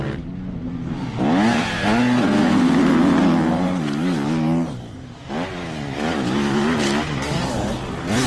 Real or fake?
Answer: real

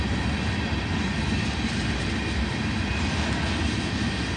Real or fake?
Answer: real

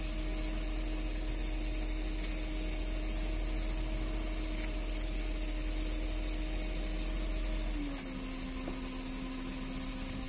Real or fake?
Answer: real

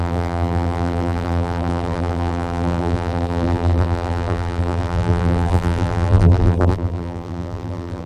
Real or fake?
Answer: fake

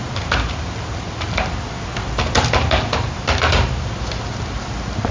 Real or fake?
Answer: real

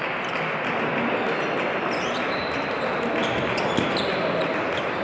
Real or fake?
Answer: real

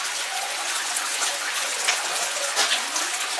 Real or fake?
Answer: fake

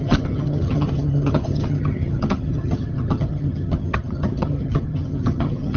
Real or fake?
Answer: fake